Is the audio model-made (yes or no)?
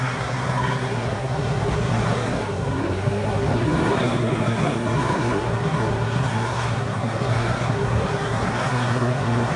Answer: yes